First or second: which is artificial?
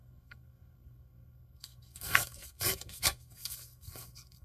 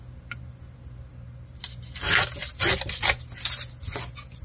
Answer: first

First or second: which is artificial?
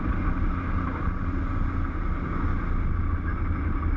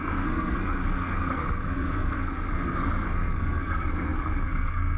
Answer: second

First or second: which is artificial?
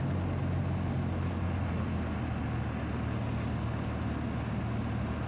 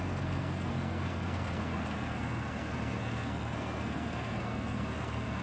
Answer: second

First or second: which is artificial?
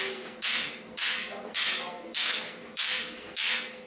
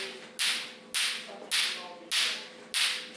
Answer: first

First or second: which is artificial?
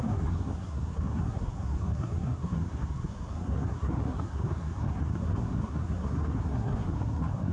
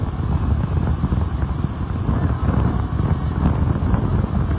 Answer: first